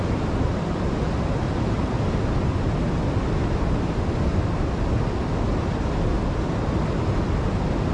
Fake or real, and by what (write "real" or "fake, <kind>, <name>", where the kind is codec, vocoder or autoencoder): real